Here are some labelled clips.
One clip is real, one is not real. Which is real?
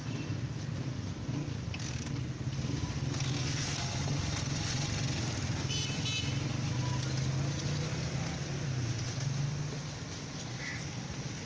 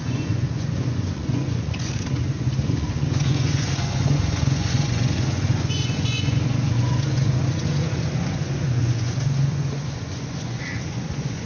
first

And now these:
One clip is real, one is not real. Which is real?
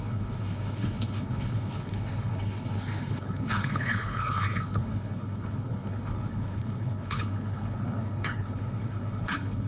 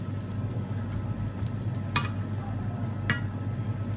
second